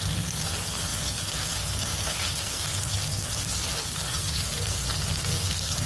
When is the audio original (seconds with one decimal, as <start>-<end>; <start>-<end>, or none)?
none